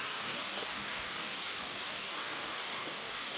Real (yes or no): no